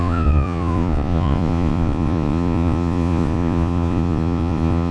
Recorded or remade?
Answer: remade